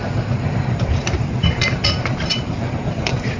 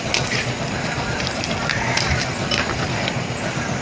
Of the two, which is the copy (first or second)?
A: first